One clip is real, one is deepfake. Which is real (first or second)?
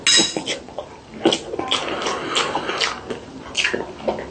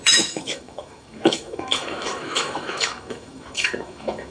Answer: first